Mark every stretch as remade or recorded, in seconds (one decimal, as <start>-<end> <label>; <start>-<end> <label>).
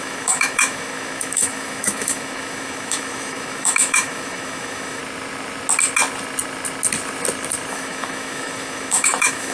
0.0-5.0 remade; 5.0-7.7 recorded; 7.7-9.5 remade